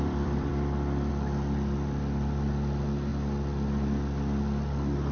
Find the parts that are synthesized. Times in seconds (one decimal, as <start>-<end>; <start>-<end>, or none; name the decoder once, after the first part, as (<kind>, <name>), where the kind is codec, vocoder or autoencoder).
0.0-0.5 (vocoder, BigVGAN v2); 1.1-3.1